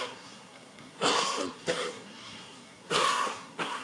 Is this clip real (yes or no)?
no